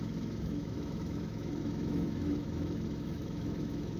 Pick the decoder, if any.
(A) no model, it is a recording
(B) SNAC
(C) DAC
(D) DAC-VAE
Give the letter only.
D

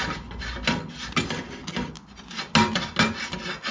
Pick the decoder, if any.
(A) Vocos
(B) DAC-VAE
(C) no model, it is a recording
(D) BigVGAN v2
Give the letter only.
C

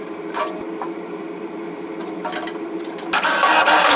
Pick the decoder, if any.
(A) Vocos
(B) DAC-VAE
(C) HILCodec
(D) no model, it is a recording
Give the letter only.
D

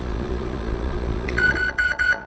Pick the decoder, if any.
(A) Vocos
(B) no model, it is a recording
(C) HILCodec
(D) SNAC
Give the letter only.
A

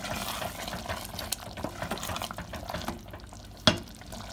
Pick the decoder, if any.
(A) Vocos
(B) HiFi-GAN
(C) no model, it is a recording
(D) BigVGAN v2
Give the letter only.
C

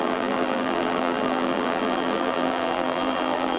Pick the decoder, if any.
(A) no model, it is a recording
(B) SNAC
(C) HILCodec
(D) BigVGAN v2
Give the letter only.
D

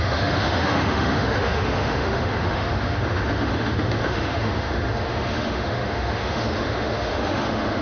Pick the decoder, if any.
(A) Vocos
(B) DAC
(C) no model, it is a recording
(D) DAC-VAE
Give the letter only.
D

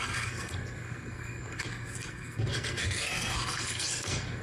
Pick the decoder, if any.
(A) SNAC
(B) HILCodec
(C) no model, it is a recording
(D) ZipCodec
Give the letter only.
A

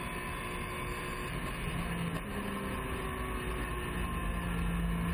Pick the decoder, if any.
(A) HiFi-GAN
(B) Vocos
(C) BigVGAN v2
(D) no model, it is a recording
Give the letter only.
D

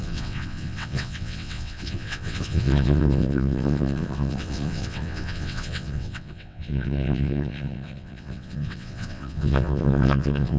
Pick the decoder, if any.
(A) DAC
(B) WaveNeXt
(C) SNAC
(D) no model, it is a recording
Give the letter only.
B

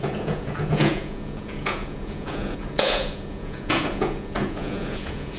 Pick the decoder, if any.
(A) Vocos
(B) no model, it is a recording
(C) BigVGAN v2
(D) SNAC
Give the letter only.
A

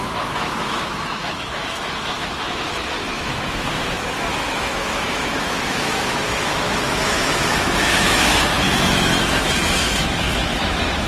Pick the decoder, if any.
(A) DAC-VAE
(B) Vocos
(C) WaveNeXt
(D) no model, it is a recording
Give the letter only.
A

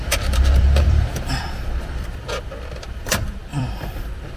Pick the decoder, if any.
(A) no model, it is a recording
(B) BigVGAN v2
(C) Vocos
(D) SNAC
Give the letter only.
B